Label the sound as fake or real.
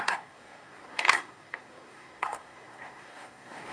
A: fake